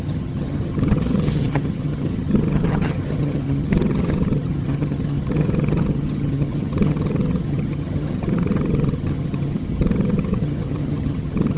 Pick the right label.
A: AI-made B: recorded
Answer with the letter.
A